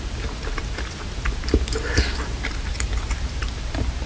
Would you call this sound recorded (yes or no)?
no